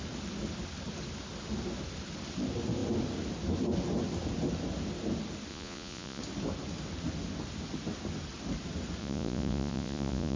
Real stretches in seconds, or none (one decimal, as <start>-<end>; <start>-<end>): 0.0-5.5; 6.2-9.0